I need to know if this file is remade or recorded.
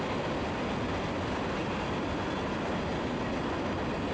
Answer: recorded